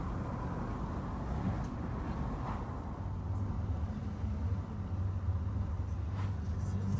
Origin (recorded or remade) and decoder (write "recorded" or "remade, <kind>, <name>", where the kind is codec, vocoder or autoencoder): recorded